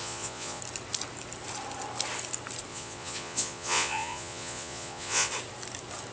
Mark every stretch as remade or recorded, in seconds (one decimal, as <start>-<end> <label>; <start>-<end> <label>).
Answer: 0.0-0.6 remade; 0.6-2.7 recorded; 2.7-5.3 remade; 5.3-6.1 recorded